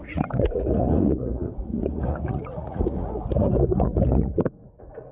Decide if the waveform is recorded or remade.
remade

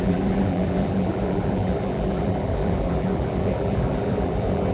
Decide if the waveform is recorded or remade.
remade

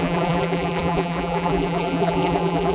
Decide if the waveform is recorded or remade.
remade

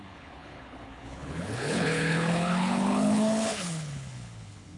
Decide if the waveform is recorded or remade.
remade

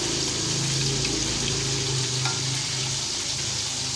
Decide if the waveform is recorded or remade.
recorded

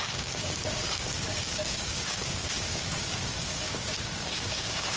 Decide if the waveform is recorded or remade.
remade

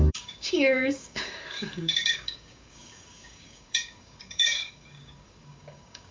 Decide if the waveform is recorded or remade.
remade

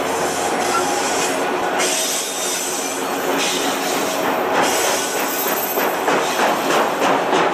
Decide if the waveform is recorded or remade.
recorded